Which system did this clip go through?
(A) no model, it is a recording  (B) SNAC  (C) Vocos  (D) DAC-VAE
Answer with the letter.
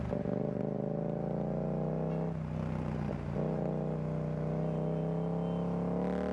A